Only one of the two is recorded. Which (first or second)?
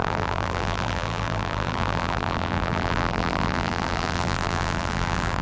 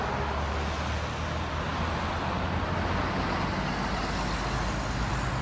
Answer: second